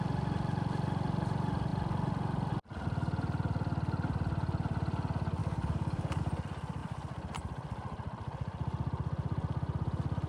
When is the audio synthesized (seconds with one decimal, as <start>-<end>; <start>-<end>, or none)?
5.4-6.2